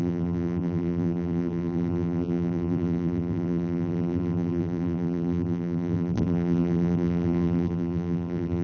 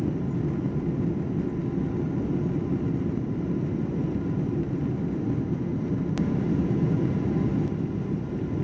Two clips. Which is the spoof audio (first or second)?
first